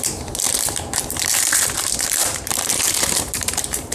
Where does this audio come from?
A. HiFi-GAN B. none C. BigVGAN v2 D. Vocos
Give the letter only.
C